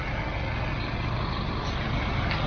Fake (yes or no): no